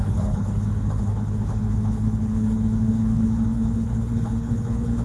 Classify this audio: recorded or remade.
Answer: remade